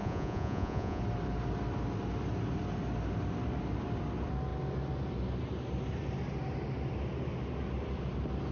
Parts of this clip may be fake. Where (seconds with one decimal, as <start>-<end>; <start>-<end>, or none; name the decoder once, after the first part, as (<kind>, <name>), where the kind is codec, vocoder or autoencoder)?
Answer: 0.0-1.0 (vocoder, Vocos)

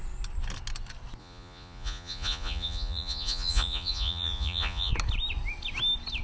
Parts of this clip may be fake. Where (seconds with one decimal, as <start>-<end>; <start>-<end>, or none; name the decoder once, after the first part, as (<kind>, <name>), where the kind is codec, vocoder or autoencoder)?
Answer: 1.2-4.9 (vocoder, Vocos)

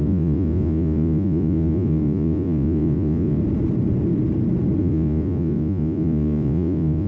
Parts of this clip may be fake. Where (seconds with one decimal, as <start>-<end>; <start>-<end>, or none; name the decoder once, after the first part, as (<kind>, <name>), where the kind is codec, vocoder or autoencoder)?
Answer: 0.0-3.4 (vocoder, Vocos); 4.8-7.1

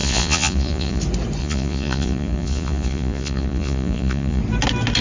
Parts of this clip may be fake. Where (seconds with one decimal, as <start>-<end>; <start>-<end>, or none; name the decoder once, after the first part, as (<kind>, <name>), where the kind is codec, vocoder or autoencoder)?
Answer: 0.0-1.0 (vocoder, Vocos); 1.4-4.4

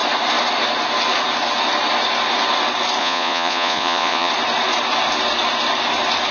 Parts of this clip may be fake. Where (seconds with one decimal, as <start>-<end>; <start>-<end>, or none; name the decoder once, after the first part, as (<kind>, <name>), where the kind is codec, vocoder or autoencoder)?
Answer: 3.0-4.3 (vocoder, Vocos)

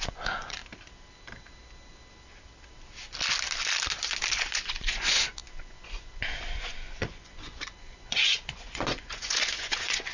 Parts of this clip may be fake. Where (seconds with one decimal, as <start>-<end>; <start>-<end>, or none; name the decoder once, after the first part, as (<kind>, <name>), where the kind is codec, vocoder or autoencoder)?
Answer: 0.0-0.6 (vocoder, Vocos); 4.3-10.1